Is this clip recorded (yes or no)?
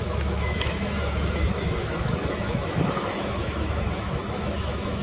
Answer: no